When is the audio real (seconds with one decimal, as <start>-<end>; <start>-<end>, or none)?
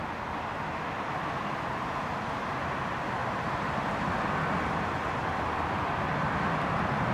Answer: 0.0-3.2; 4.1-7.1